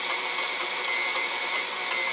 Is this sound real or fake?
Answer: real